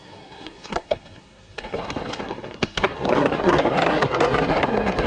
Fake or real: fake